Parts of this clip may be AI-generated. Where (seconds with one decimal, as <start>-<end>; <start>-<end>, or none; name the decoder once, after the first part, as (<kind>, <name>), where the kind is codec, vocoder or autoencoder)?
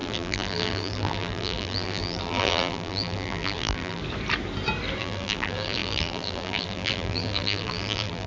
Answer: 0.0-4.0 (vocoder, BigVGAN v2); 5.0-8.3